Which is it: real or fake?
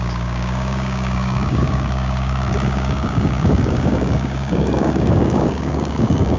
fake